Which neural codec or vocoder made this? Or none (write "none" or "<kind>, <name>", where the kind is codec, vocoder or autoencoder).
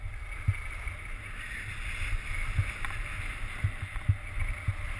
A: none